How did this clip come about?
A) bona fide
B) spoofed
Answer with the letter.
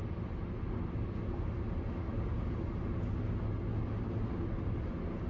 A